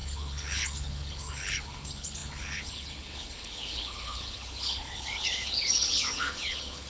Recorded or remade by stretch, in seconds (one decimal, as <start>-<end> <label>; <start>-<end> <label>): 0.0-6.9 remade